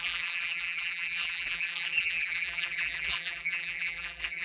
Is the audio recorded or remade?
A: remade